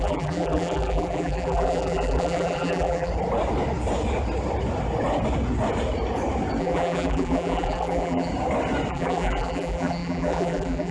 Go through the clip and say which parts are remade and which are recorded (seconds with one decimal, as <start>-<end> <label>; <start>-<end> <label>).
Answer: 0.0-3.1 remade; 3.1-6.6 recorded; 6.6-8.3 remade; 8.3-8.9 recorded; 8.9-10.9 remade